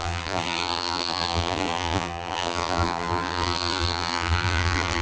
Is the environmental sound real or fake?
fake